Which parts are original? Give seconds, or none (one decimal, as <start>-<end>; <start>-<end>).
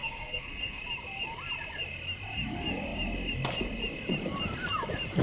0.8-5.2